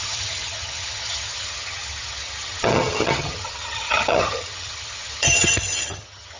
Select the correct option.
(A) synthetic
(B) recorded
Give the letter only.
A